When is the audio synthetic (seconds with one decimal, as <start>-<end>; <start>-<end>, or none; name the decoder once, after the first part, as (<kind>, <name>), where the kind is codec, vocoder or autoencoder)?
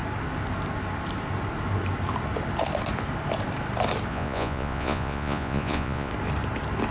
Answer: 4.1-6.1 (vocoder, Vocos)